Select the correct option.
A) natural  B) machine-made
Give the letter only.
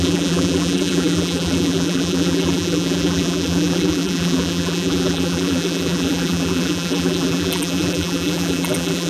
B